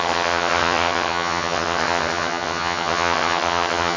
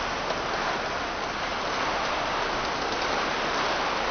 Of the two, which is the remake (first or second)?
first